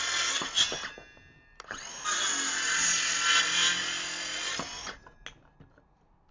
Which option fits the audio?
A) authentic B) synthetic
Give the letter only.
A